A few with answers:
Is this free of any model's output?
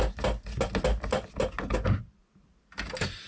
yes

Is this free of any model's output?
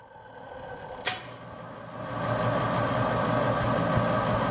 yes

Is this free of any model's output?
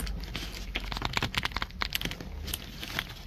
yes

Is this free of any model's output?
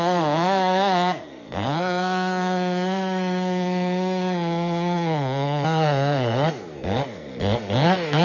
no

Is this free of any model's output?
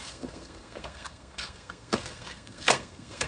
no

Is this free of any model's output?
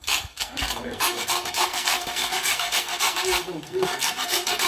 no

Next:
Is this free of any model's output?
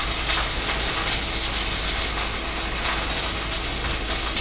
yes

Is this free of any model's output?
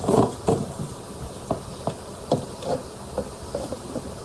yes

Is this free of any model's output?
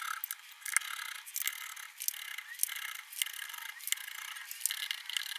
yes